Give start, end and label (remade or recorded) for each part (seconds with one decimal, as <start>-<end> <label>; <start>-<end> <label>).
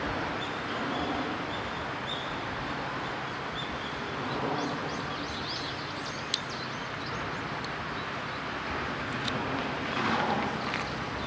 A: 0.0-11.3 recorded